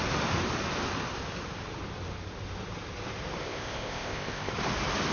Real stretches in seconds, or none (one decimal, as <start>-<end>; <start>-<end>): 0.0-3.4; 4.5-5.1